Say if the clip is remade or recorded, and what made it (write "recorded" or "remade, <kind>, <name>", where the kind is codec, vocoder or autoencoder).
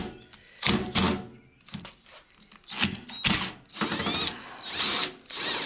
recorded